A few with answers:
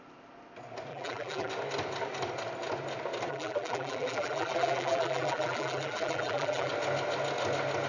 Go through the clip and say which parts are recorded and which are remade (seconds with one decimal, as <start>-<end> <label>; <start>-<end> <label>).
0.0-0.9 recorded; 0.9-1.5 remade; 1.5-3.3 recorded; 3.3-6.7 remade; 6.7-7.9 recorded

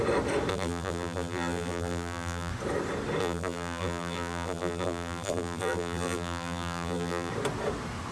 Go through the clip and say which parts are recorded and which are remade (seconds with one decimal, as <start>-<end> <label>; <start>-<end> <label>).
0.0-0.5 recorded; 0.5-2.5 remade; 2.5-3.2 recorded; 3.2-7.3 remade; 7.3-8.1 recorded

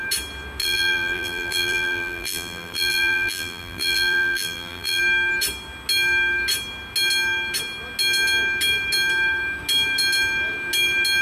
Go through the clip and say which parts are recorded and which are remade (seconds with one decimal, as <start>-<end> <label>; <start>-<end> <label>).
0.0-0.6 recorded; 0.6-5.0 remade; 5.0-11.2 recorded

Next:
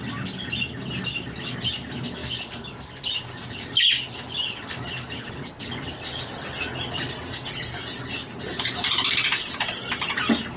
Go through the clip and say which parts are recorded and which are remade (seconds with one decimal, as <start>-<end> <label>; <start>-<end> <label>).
0.0-8.5 recorded; 8.5-10.1 remade; 10.1-10.6 recorded

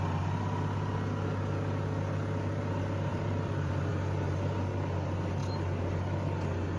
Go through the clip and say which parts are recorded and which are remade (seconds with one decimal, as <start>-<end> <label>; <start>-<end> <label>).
0.0-3.1 recorded; 3.1-3.9 remade; 3.9-6.8 recorded

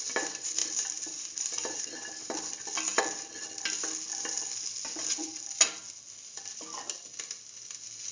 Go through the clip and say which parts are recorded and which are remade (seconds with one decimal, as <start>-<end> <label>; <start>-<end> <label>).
0.0-2.9 remade; 2.9-8.1 recorded

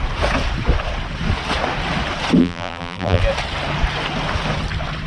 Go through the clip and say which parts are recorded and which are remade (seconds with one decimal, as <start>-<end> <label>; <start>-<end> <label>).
0.0-2.4 recorded; 2.4-3.2 remade; 3.2-5.1 recorded

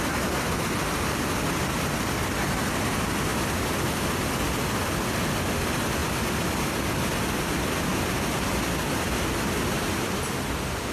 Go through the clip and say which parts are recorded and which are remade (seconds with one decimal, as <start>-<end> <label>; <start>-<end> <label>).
0.0-3.3 recorded; 3.3-3.9 remade; 3.9-6.0 recorded; 6.0-6.9 remade; 6.9-10.9 recorded